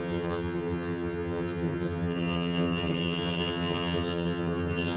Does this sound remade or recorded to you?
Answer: remade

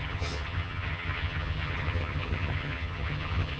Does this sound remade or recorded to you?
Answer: remade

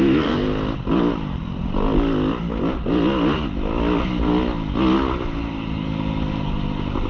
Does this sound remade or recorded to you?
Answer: recorded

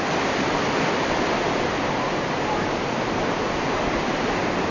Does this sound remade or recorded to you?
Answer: recorded